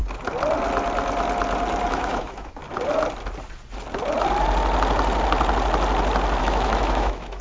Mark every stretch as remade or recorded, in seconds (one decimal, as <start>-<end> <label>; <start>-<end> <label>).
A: 0.0-1.9 recorded; 1.9-2.6 remade; 2.6-6.4 recorded; 6.4-7.4 remade